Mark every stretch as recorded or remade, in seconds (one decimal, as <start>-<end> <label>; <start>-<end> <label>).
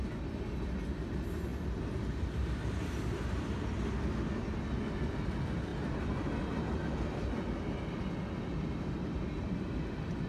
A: 0.0-10.3 recorded